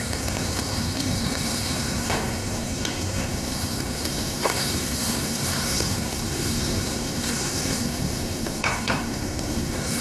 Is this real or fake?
fake